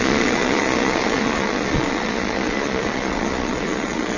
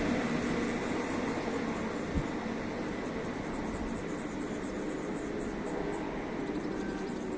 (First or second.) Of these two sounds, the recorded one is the second